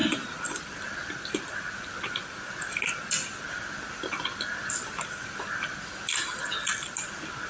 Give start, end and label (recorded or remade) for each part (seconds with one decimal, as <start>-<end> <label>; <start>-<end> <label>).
0.0-7.5 recorded